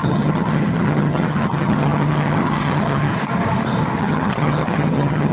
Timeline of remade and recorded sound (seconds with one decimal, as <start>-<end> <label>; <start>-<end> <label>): 0.0-3.1 remade; 3.1-4.0 recorded; 4.0-5.3 remade